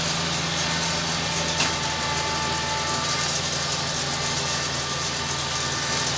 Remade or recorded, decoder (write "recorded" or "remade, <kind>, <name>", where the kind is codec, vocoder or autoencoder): recorded